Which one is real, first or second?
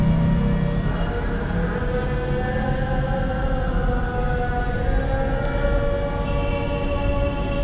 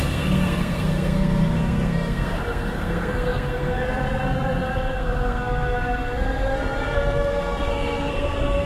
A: first